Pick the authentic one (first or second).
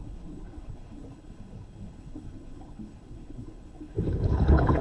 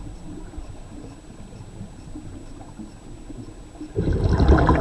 second